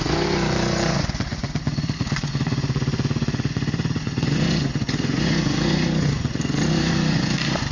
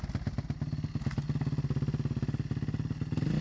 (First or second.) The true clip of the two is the second